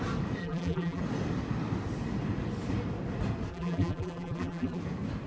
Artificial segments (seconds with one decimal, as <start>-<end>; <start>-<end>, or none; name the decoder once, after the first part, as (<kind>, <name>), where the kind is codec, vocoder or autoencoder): 0.4-1.0 (vocoder, BigVGAN v2); 3.5-4.8